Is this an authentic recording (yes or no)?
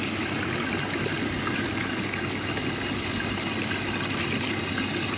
yes